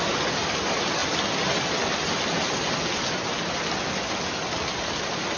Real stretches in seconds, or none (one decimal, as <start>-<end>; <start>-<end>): 0.0-5.4